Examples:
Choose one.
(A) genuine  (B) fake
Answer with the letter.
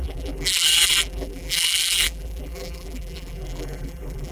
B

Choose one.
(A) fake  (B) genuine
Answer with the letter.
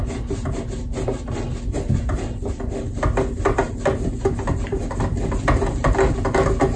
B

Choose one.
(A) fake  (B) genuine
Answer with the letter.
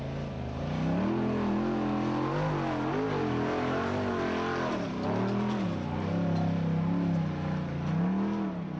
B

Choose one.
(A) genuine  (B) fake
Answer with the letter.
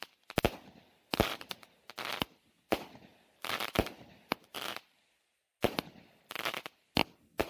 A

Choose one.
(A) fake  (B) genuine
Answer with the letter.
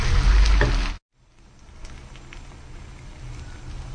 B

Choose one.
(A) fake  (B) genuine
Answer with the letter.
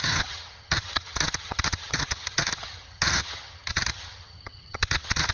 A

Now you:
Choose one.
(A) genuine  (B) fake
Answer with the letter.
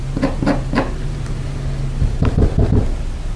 A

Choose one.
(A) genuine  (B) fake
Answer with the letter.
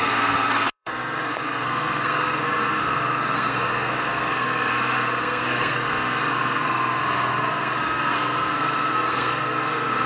B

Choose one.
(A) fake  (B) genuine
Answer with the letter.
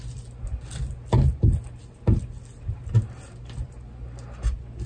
B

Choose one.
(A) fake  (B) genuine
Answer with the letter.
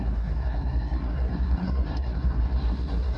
A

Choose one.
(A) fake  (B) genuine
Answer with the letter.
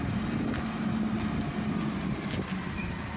B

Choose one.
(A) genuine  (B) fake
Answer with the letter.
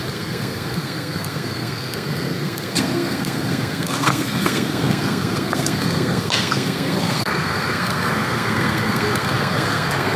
B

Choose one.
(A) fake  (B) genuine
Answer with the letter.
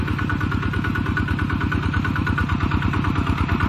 B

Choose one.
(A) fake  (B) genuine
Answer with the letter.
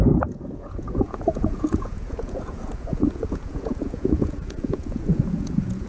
A